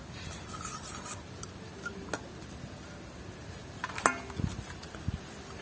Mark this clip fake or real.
real